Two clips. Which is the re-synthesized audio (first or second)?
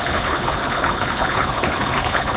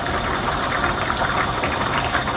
first